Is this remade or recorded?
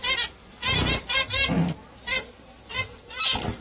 recorded